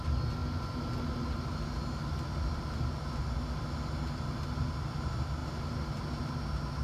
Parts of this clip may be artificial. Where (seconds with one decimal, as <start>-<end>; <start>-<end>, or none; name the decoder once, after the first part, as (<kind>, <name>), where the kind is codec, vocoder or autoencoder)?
none